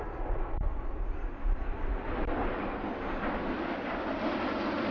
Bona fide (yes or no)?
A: yes